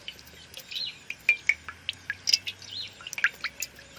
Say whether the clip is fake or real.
real